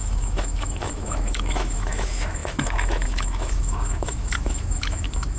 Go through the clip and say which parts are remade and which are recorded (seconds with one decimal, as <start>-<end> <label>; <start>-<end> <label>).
0.0-5.4 remade